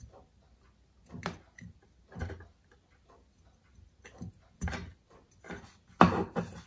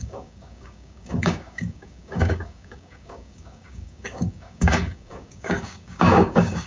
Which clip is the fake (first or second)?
second